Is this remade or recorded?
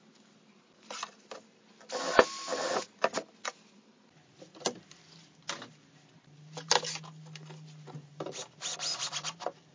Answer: recorded